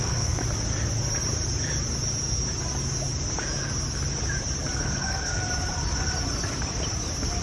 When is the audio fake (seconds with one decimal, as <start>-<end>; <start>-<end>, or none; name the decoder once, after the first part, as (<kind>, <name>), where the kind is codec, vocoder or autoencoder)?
0.0-0.4 (codec, SNAC); 4.8-5.4